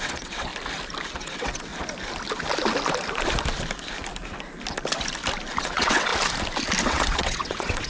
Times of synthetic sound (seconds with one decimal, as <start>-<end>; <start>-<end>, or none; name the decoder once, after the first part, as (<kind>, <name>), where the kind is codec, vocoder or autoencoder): 0.0-0.5 (vocoder, WaveNeXt); 1.2-1.7; 5.6-6.1; 6.8-7.9